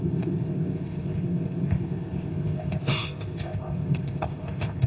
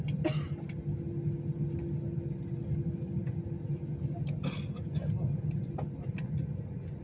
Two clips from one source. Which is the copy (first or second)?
first